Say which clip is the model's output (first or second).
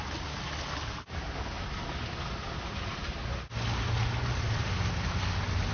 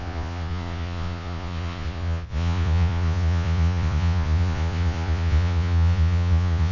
second